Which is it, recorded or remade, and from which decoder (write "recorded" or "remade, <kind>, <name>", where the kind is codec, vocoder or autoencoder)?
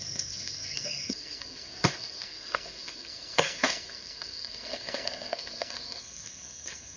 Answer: remade, codec, SNAC